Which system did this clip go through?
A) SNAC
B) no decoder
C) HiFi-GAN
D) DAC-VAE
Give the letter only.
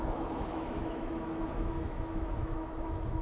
D